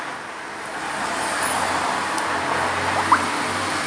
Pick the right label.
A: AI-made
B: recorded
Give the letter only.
B